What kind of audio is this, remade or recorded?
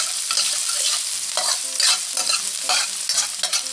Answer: recorded